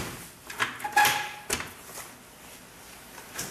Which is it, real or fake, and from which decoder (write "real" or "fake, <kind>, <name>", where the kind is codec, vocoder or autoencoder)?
real